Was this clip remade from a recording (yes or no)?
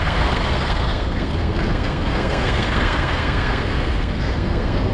yes